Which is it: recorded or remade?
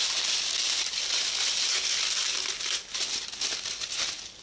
recorded